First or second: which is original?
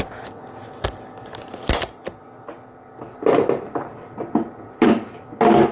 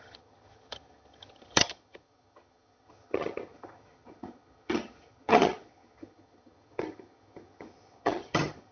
first